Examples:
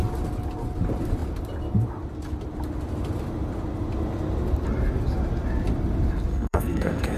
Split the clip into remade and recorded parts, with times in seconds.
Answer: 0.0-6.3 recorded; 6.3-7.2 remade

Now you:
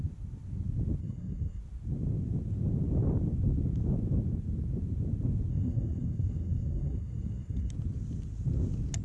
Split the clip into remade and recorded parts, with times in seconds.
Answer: 0.0-1.0 recorded; 1.0-1.6 remade; 1.6-5.5 recorded; 5.5-7.7 remade; 7.7-9.0 recorded

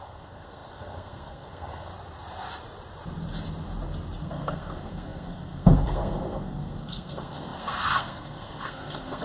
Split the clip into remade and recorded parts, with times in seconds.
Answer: 0.0-1.9 remade; 1.9-4.2 recorded; 4.2-9.2 remade

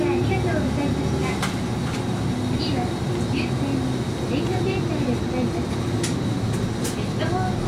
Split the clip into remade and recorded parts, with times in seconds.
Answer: 0.0-7.7 recorded

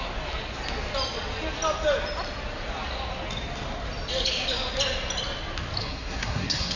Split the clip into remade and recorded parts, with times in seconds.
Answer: 0.0-5.8 recorded; 5.8-6.8 remade